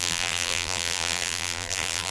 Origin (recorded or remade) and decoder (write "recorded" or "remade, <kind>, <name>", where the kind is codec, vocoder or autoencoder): remade, vocoder, BigVGAN v2